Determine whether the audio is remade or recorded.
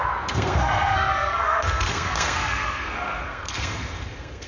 remade